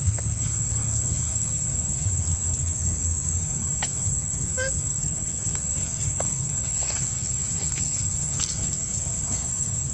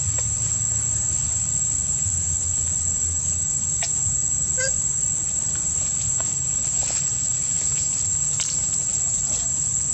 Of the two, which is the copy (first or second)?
first